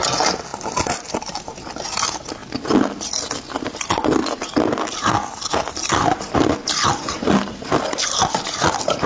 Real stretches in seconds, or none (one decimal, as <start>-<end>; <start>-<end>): 0.0-0.5; 1.5-9.1